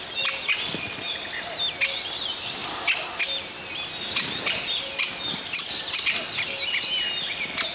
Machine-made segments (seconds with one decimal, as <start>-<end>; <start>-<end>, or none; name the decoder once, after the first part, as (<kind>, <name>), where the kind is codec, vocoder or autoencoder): none